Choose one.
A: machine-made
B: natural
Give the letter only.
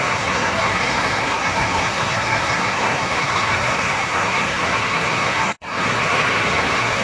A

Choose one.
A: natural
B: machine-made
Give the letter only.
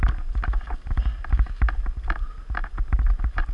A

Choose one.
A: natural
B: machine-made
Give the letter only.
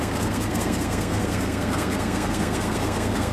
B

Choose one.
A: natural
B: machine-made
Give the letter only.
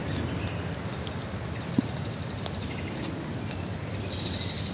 A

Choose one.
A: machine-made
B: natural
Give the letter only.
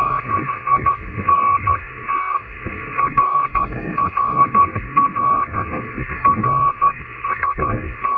A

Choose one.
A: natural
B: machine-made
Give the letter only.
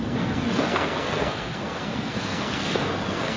B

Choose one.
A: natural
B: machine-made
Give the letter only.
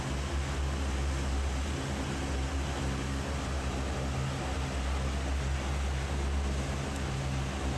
A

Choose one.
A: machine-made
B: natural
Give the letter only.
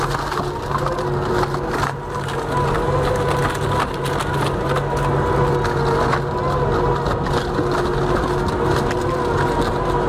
B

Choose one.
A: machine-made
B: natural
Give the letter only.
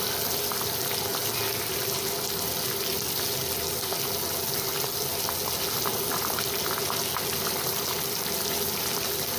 B